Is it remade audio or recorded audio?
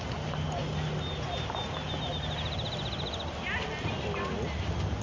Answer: recorded